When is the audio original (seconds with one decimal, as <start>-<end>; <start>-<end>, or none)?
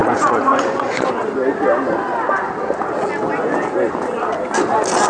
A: 1.1-5.1